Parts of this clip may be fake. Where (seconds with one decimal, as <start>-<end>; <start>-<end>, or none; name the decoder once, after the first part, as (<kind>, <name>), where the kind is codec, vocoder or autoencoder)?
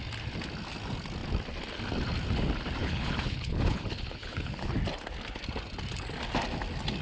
2.8-4.7 (codec, HILCodec)